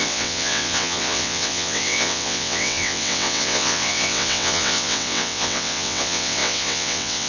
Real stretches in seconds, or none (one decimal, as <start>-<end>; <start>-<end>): none